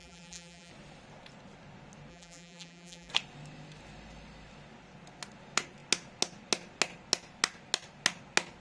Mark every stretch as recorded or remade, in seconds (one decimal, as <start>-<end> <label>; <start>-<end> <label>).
0.0-0.7 remade; 0.7-2.1 recorded; 2.1-3.1 remade; 3.1-8.6 recorded